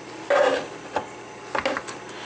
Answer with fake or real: real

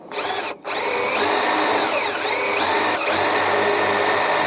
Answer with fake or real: real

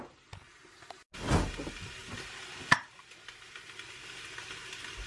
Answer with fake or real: real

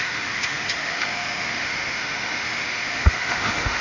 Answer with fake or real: fake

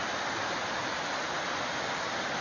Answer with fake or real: real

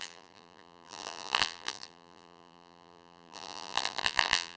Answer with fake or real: fake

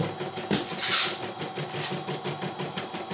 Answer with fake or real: real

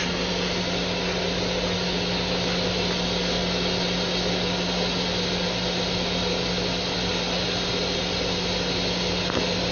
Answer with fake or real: real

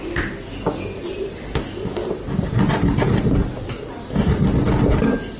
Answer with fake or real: real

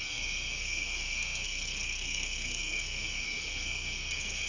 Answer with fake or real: fake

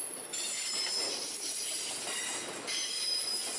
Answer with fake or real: fake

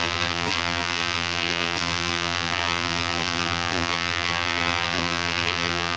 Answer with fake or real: fake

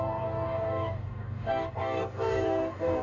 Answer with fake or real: fake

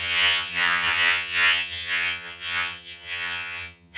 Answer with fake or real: fake